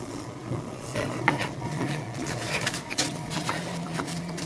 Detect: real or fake fake